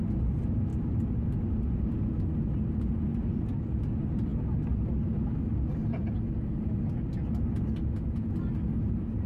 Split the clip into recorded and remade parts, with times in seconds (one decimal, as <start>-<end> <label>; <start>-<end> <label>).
0.0-9.3 recorded